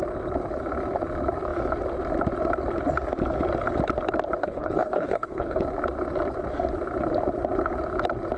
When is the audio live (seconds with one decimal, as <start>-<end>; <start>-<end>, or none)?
0.0-4.4; 5.6-8.4